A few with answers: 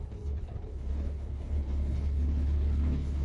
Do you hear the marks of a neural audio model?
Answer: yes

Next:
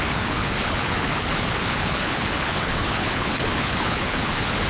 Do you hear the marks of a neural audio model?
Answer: yes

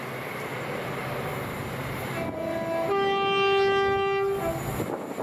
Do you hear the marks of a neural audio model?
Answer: no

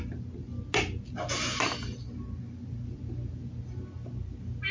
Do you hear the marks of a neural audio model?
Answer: no